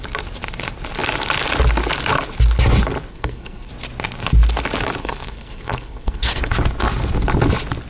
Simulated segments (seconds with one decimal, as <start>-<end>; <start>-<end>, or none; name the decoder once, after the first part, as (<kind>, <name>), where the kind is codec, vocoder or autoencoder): 3.1-3.7 (codec, SNAC); 5.0-6.4

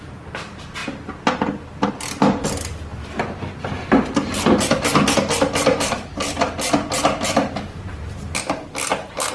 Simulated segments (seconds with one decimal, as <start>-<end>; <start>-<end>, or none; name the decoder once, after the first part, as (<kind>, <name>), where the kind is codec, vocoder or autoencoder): none

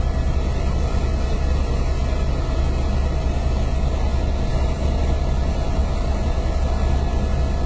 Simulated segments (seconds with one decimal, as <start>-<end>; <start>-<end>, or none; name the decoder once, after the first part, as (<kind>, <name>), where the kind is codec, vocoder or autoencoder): 4.5-5.2 (vocoder, BigVGAN v2)

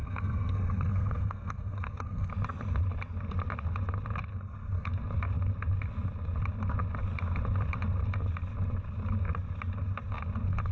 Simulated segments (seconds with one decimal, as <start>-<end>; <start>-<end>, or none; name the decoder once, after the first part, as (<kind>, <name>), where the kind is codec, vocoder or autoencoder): 0.0-2.3 (codec, SNAC); 4.3-4.9

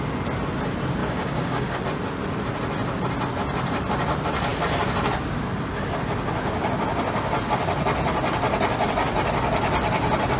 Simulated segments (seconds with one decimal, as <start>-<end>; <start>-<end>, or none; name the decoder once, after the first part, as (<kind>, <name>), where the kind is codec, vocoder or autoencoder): 1.0-1.8 (codec, DAC)

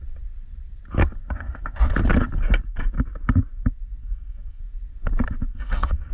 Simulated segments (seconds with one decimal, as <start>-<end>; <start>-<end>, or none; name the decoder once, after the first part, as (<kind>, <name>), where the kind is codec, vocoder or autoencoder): 4.0-4.6 (codec, SNAC); 5.5-6.1

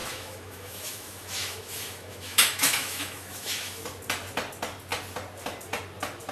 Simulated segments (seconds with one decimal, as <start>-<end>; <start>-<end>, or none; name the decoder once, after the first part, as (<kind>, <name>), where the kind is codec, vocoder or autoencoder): 0.0-3.8 (autoencoder, DAC-VAE)